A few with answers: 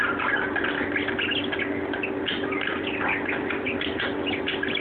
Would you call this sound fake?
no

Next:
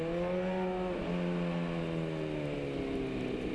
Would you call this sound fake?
no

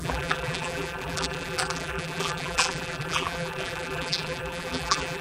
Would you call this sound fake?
yes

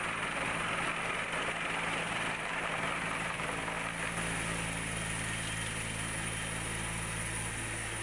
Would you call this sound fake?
no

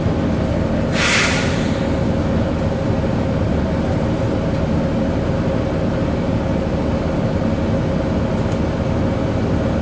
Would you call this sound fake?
no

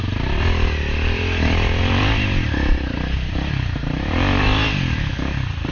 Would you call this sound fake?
yes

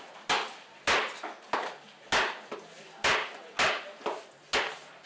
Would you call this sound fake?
no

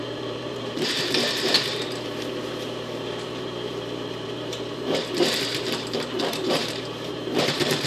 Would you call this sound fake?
yes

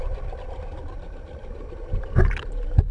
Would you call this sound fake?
yes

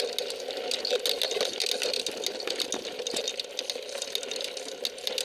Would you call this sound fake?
no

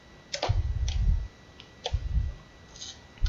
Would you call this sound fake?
no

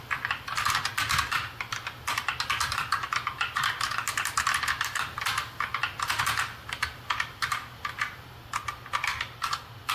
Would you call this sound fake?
no